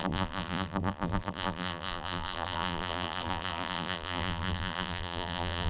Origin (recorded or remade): remade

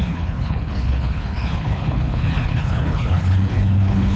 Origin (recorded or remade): remade